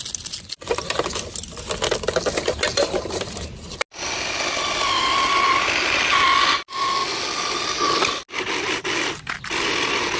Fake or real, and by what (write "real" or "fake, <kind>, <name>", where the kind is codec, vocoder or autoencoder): real